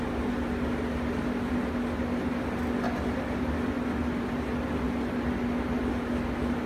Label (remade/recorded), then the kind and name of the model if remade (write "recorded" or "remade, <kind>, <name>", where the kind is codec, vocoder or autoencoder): recorded